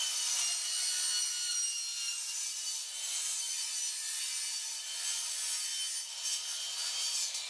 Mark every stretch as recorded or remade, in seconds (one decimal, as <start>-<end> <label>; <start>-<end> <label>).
0.0-7.5 recorded